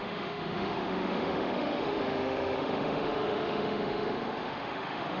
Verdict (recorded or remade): remade